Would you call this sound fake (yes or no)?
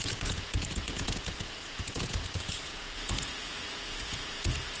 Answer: yes